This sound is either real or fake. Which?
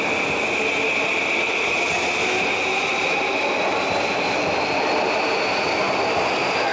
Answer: real